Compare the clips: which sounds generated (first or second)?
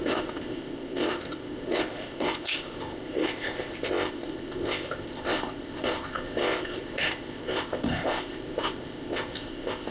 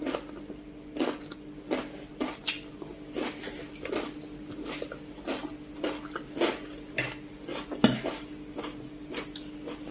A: first